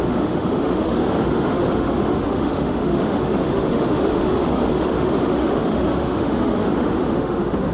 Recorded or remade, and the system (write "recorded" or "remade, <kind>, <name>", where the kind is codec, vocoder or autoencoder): remade, autoencoder, DAC-VAE